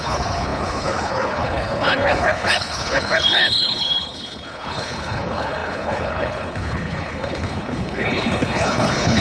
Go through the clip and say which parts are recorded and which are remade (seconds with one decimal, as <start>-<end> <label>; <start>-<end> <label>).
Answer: 0.0-9.2 remade